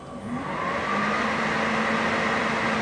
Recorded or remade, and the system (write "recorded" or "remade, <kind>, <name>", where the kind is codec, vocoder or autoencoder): recorded